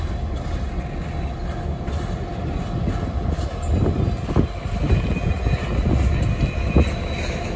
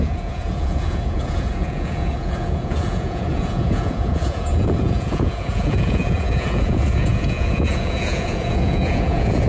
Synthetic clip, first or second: second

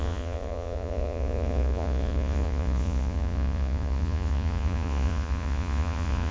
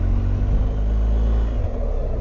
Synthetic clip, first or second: first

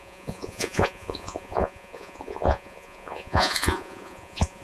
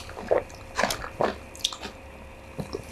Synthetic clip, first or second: first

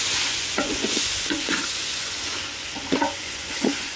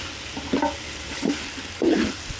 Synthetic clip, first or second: first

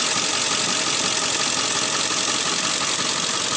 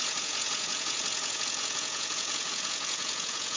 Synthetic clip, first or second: second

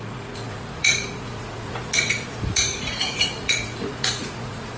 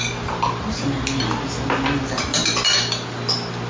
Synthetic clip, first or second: first